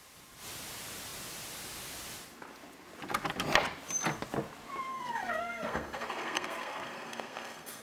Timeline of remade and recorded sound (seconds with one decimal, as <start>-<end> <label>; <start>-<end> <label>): 0.0-4.9 recorded; 4.9-7.8 remade